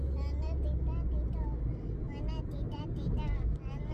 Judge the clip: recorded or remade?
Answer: recorded